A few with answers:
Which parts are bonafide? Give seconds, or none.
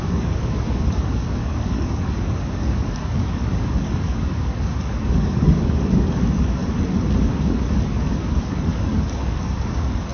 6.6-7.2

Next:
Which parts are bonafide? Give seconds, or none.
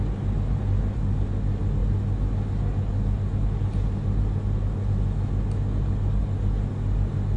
0.0-7.4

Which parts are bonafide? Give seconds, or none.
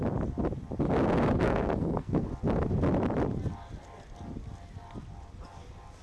0.0-1.4; 2.3-6.0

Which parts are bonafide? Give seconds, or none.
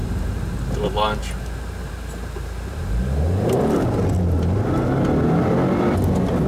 0.0-6.5